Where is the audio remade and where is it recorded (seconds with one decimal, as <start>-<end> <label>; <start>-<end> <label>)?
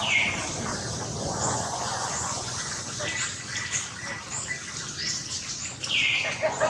0.0-0.4 remade; 0.4-1.2 recorded; 1.2-3.0 remade; 3.0-5.5 recorded; 5.5-6.7 remade